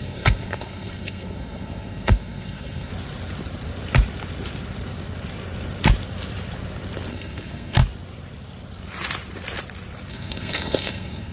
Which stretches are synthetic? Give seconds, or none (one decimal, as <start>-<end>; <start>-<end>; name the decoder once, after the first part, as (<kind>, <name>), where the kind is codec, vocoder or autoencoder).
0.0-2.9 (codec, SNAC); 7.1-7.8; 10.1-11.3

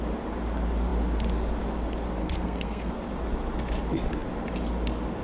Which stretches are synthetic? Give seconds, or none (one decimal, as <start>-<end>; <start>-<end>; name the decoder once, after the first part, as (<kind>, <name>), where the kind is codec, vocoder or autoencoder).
2.2-2.9 (codec, SNAC)

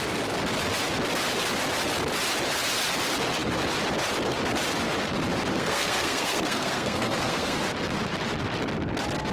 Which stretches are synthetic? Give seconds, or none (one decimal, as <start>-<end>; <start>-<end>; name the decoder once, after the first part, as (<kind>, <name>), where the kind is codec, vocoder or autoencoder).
5.5-7.6 (codec, SNAC)